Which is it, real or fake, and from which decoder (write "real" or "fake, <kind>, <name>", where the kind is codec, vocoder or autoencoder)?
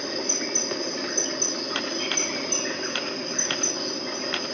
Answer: real